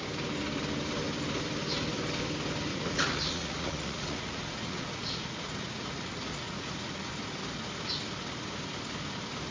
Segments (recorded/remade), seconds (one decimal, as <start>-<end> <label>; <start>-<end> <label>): 0.0-2.7 recorded; 2.7-7.1 remade; 7.1-9.5 recorded